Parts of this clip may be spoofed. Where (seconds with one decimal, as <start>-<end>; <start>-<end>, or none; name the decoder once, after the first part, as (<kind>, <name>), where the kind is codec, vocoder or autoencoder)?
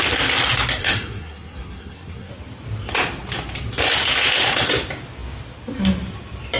0.8-2.3 (codec, SNAC)